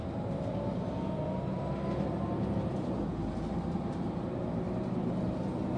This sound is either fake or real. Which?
real